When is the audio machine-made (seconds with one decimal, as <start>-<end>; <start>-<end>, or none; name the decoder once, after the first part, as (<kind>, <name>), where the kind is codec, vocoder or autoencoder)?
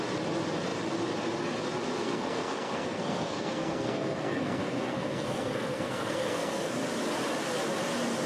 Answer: 2.0-6.7 (codec, SNAC)